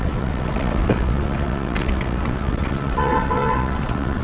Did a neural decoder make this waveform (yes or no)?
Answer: yes